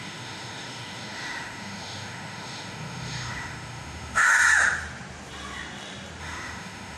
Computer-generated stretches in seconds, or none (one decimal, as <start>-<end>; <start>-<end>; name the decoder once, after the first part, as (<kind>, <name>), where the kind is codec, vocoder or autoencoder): 0.0-4.4 (autoencoder, DAC-VAE); 6.2-7.0